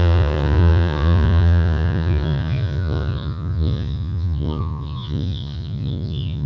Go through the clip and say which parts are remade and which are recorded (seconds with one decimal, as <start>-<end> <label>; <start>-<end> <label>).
0.0-6.5 remade